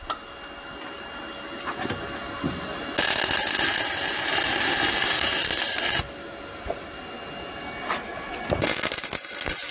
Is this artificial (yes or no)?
no